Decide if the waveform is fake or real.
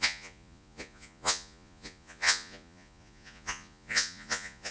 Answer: fake